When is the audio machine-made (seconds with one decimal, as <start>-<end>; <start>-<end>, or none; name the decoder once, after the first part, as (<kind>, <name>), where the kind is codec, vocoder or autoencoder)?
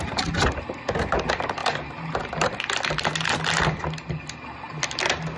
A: none